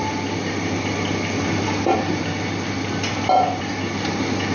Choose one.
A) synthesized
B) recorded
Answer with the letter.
B